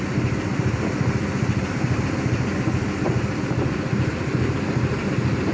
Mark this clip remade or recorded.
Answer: recorded